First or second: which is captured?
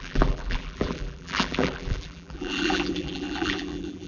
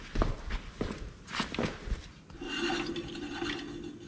second